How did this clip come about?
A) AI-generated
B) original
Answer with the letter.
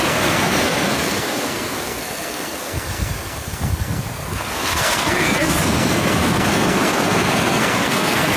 A